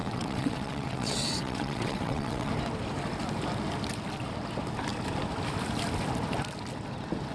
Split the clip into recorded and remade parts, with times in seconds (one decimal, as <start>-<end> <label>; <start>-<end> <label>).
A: 0.0-2.5 remade; 2.5-7.3 recorded